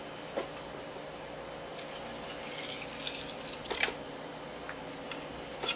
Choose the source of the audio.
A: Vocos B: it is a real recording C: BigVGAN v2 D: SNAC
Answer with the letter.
B